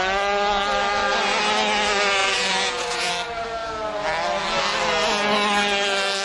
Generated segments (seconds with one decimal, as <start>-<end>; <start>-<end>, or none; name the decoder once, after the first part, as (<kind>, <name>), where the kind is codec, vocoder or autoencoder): 2.2-3.1 (vocoder, Vocos)